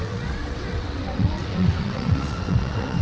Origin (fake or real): fake